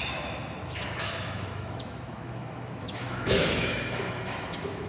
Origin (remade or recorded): remade